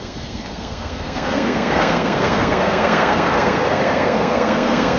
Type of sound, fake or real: fake